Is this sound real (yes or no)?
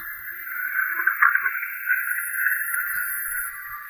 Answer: no